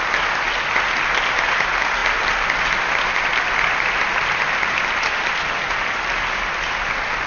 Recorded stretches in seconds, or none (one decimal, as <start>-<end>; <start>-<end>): 0.0-7.3